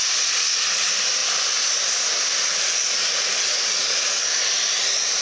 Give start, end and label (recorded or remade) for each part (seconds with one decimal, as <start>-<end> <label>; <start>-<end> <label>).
0.0-5.2 recorded

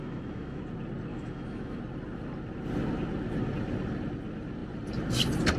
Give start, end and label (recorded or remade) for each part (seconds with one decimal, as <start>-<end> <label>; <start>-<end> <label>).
0.0-0.6 remade; 0.6-1.1 recorded; 1.1-1.8 remade; 1.8-5.6 recorded

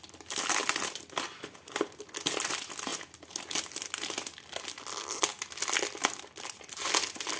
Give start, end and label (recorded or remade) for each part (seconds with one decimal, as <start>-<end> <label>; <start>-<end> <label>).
0.0-7.4 recorded

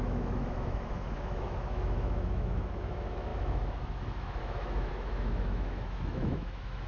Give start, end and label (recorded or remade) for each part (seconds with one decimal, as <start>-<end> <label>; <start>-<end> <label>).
0.0-6.9 remade

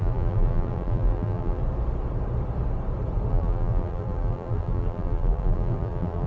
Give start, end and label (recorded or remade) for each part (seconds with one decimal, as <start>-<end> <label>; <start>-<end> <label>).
0.0-1.6 remade; 1.6-3.3 recorded; 3.3-6.3 remade

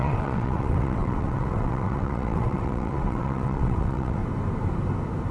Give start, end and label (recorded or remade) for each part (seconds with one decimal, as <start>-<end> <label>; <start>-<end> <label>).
0.0-4.2 remade; 4.2-5.3 recorded